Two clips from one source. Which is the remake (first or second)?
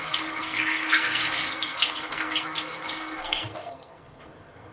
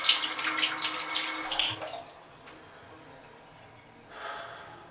first